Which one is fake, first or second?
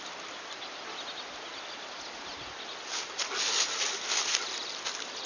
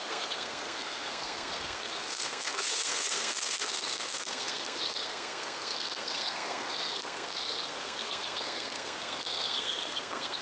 second